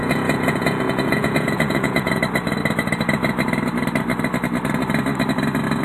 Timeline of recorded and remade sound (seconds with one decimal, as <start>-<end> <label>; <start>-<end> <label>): 0.0-2.2 remade; 2.2-5.8 recorded